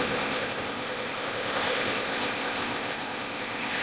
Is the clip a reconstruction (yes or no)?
yes